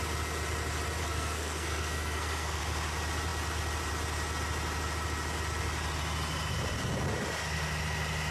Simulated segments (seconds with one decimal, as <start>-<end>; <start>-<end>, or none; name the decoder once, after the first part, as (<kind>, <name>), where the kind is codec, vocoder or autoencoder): 1.0-2.6 (codec, SNAC)